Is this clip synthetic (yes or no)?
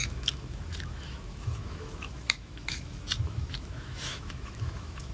yes